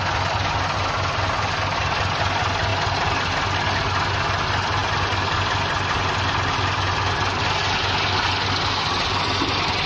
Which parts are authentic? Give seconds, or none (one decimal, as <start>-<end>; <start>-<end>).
0.0-9.9